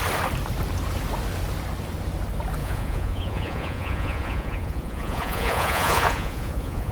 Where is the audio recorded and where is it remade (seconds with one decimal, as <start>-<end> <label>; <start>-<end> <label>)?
0.0-2.6 recorded; 2.6-6.9 remade